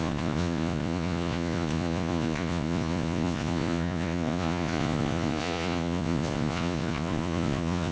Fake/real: fake